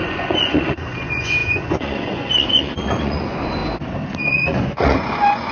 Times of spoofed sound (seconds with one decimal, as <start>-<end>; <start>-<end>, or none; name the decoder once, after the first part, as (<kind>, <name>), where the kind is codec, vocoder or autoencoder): 0.0-3.6 (vocoder, Vocos); 4.2-5.5